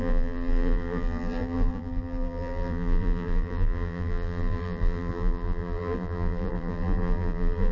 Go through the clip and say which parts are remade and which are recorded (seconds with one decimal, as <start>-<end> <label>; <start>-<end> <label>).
0.0-7.7 remade